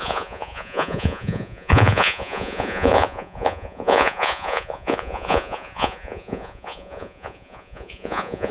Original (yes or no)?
no